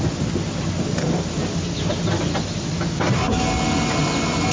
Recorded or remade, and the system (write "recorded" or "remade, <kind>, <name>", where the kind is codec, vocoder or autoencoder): recorded